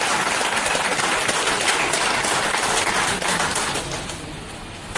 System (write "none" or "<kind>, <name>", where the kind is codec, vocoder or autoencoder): none